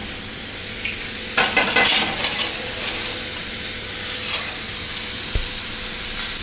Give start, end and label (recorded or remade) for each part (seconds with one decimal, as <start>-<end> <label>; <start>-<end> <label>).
0.0-3.8 remade; 3.8-4.7 recorded; 4.7-5.6 remade; 5.6-6.4 recorded